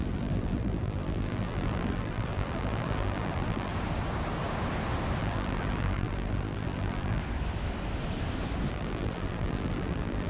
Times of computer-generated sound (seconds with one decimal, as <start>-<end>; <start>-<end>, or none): 0.0-3.7; 5.2-7.2; 8.7-10.3